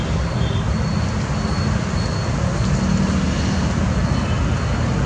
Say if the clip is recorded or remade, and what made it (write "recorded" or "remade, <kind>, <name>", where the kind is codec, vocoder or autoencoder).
recorded